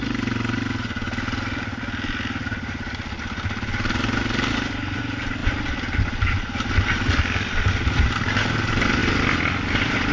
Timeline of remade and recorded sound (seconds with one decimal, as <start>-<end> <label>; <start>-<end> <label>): 0.0-10.1 recorded